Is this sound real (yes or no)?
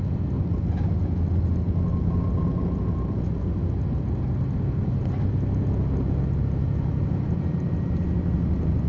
yes